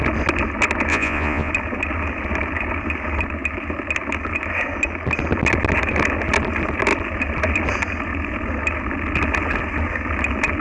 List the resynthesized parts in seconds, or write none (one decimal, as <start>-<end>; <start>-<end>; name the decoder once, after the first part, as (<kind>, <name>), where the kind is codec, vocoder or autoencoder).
0.9-1.5 (vocoder, Vocos)